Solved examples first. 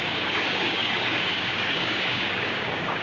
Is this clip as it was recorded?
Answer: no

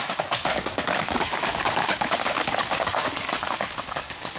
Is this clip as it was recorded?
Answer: no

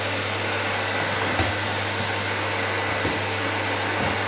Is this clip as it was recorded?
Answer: yes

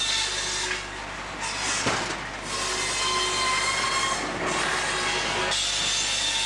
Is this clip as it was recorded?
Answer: yes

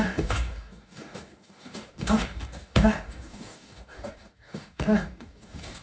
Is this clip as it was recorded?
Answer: no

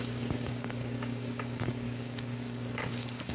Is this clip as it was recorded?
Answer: no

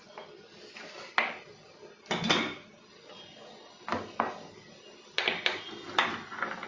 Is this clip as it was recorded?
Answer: yes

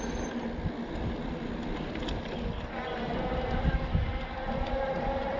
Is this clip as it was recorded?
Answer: yes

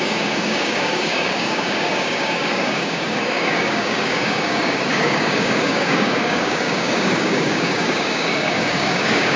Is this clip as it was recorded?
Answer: no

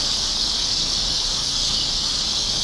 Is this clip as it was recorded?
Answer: no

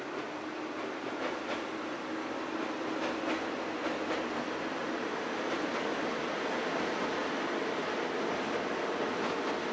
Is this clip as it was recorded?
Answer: yes